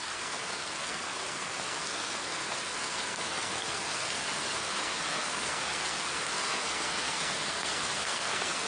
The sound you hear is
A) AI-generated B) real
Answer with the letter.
A